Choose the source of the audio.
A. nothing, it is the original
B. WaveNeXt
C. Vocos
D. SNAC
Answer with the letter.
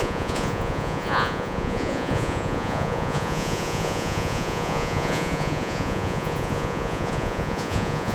C